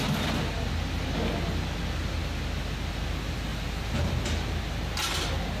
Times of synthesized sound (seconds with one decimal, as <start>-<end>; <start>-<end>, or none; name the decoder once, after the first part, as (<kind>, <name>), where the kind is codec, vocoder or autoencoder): 3.5-4.1 (vocoder, BigVGAN v2)

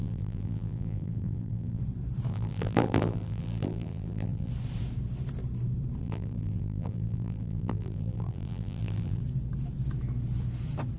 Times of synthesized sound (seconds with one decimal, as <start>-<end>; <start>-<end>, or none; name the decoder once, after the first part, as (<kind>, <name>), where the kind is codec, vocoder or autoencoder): 0.0-1.8 (vocoder, BigVGAN v2); 2.3-4.5; 6.0-9.2